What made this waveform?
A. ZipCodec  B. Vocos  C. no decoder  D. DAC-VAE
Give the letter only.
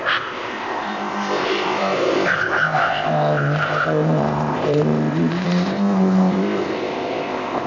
A